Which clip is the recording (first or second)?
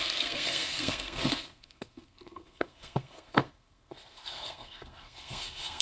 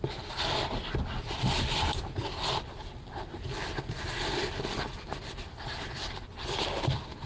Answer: second